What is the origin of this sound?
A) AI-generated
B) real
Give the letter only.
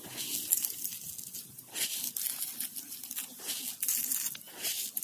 B